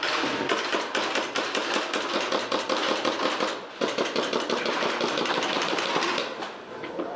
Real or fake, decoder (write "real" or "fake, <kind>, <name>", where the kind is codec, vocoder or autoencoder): real